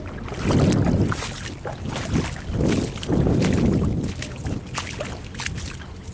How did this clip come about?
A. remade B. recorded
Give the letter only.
B